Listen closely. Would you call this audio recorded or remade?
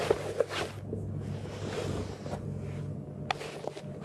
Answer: recorded